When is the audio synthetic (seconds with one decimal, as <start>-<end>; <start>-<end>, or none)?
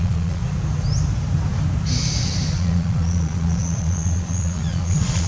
0.0-0.4; 2.5-5.3